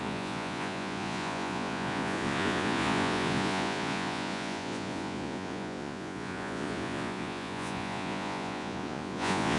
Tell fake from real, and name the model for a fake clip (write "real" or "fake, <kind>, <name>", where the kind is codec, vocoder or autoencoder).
fake, vocoder, Vocos